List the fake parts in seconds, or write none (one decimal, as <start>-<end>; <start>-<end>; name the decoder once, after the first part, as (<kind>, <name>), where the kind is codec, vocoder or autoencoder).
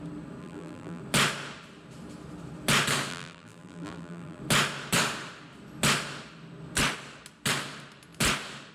0.4-1.0 (vocoder, BigVGAN v2); 3.1-4.4